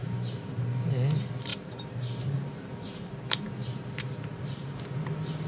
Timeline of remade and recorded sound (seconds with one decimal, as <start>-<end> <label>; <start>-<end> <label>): 0.0-0.9 remade; 0.9-1.5 recorded; 1.5-4.8 remade; 4.8-5.5 recorded